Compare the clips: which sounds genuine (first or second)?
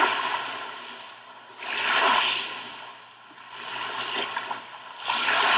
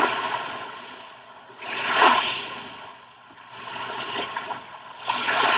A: first